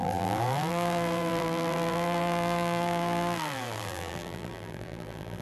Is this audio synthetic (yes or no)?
yes